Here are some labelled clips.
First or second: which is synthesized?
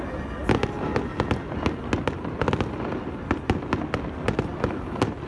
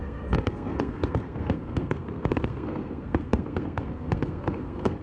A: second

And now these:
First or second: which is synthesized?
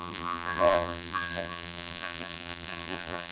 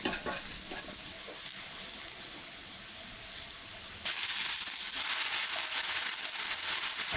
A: first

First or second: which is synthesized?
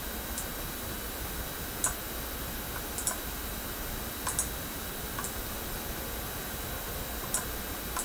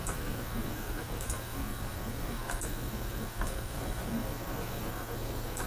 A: second